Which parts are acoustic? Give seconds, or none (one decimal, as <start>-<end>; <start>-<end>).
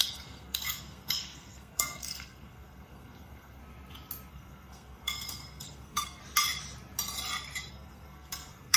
3.6-4.3; 6.2-7.7